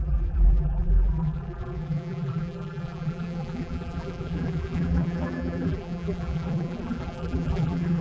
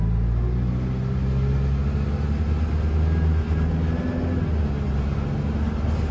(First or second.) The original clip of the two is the second